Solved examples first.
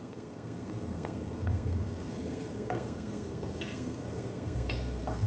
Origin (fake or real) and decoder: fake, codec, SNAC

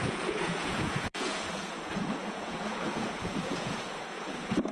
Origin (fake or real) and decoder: fake, vocoder, Vocos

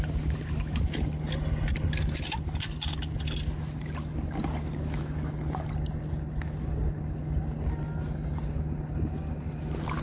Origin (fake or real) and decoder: real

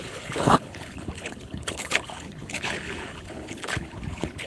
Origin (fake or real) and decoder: fake, codec, HILCodec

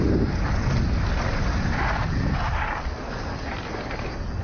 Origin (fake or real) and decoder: real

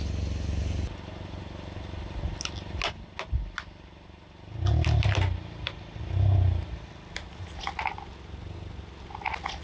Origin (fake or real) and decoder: real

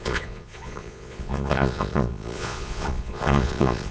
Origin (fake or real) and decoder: fake, vocoder, Vocos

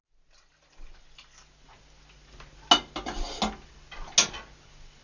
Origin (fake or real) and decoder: real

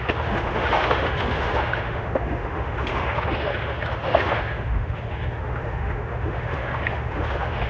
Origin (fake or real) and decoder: fake, autoencoder, DAC-VAE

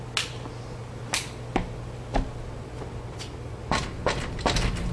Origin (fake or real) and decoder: real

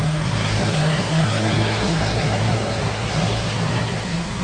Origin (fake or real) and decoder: fake, codec, SNAC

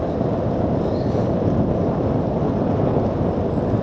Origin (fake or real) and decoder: real